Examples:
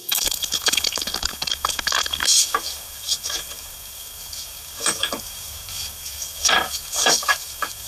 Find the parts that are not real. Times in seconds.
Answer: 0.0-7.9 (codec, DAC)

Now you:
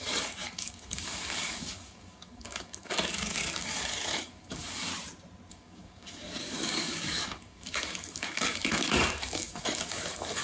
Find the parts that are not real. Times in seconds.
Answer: 0.0-4.9 (codec, DAC); 5.5-10.4

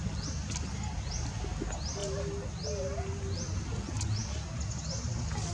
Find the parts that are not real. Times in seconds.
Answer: none

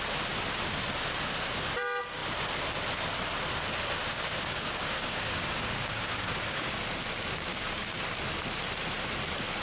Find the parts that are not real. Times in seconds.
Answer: 4.0-6.7 (codec, DAC); 7.5-8.0

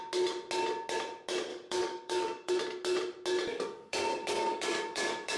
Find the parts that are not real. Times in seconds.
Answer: 1.5-2.5 (codec, DAC); 3.5-5.4

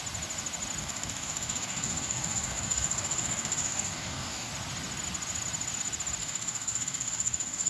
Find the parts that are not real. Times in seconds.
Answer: 0.8-4.5 (codec, DAC); 6.2-7.7

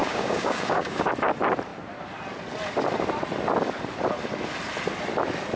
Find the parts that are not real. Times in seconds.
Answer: 0.0-1.1 (codec, DAC)

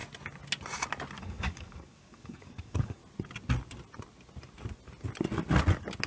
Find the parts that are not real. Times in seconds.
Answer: 1.2-3.0 (codec, DAC)